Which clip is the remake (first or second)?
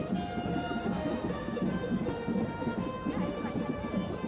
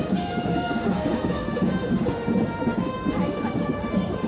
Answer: second